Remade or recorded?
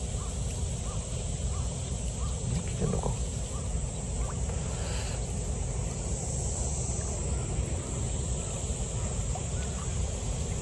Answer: recorded